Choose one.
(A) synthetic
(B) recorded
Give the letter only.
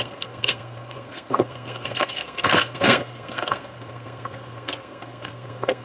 A